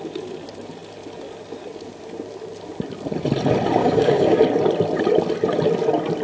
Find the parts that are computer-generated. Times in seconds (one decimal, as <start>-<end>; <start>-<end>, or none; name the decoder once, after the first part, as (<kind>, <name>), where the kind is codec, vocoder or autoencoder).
3.8-4.4 (codec, DAC)

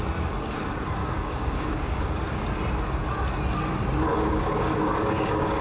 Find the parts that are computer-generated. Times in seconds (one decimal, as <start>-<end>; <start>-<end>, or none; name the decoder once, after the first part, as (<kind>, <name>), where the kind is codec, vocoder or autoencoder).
1.0-2.4 (codec, DAC); 4.1-5.6

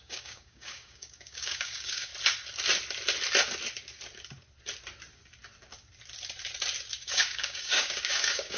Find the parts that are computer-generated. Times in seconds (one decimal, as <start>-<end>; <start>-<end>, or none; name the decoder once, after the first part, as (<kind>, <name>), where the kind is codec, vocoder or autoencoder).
0.0-2.1 (codec, DAC); 7.0-8.6

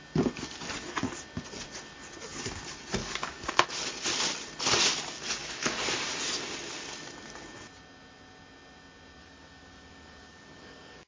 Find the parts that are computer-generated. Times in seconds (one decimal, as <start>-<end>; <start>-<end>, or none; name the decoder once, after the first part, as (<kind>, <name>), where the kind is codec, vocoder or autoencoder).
3.0-3.5 (codec, DAC); 5.4-5.9; 9.2-11.1

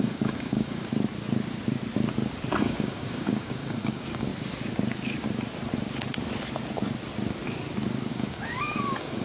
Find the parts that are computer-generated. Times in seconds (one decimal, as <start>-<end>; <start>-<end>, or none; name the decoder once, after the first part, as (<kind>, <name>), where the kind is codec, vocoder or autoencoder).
0.0-0.9 (codec, DAC); 2.6-4.3; 8.1-9.2

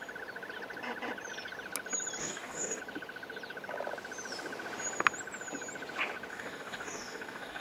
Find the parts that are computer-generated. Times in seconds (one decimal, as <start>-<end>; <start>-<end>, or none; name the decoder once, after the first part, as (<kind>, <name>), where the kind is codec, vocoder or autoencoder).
2.2-2.8 (codec, DAC); 6.3-7.6

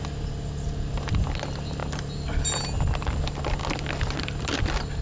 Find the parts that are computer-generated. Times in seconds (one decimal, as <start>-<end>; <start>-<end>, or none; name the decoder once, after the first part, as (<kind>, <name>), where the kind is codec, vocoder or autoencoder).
none

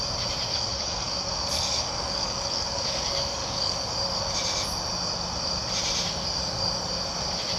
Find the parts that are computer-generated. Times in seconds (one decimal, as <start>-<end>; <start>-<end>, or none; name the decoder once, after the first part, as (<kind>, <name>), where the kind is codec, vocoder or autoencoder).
0.5-3.9 (codec, DAC)